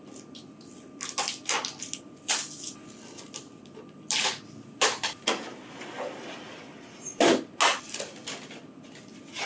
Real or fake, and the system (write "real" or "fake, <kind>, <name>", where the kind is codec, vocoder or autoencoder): real